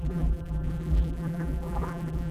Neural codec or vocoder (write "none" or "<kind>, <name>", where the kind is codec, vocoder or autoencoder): vocoder, BigVGAN v2